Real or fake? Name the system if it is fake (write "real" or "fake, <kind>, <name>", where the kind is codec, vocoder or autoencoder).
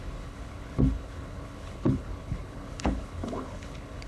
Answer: fake, codec, HILCodec